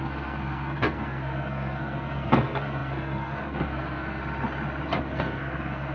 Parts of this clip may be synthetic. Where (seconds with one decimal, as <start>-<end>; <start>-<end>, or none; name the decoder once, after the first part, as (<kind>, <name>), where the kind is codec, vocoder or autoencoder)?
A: 0.0-4.2 (codec, SNAC); 5.0-5.9